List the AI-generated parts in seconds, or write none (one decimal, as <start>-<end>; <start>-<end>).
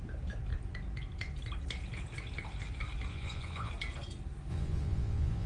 3.1-3.7; 4.5-5.5